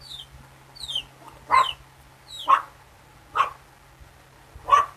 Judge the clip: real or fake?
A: real